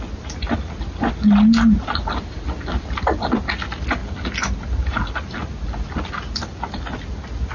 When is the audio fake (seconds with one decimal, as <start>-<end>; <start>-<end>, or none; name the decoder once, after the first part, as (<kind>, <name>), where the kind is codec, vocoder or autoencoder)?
none